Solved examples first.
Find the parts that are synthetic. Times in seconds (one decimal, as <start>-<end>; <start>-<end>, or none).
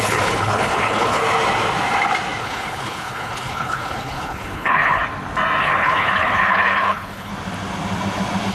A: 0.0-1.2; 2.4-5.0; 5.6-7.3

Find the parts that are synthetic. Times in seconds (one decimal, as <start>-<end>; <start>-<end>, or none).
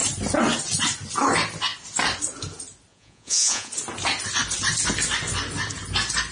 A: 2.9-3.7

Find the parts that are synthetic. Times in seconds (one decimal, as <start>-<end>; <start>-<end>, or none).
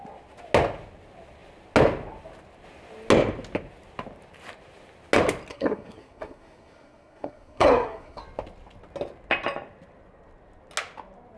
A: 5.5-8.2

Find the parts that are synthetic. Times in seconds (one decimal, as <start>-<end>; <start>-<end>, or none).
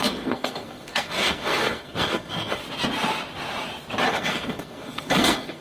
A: 0.0-2.6; 4.1-5.6